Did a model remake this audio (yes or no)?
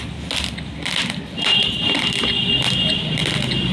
no